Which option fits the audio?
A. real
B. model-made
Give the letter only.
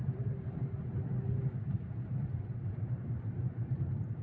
B